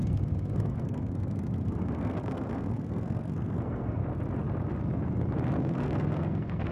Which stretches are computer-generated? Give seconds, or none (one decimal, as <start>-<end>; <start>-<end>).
0.0-4.0; 5.6-6.7